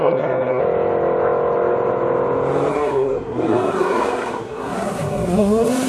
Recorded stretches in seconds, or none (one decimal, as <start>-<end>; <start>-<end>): 0.6-2.7